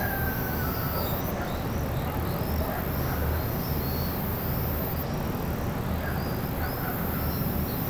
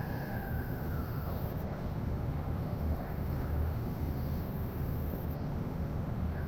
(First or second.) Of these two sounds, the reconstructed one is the second